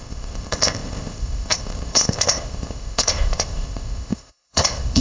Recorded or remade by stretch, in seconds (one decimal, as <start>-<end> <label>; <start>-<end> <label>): 0.0-5.0 remade